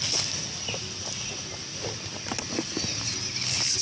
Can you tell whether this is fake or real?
real